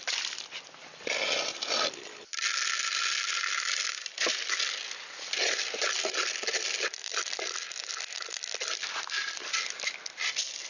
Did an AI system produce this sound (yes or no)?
no